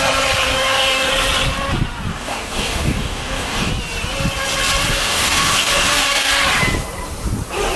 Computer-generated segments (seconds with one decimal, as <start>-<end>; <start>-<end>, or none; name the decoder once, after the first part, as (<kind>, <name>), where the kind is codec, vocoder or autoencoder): 0.5-1.1 (codec, DAC); 2.1-3.7; 4.9-6.3